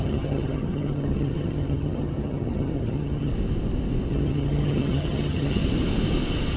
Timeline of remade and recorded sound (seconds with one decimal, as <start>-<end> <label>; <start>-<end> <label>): 0.0-3.3 remade; 3.3-4.1 recorded; 4.1-5.6 remade; 5.6-6.6 recorded